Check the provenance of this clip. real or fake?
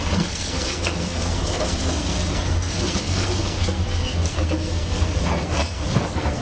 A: fake